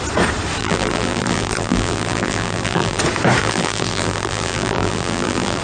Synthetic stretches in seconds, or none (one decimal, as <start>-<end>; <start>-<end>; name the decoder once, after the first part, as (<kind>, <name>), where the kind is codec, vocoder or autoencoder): 0.6-3.0 (vocoder, BigVGAN v2); 3.4-5.6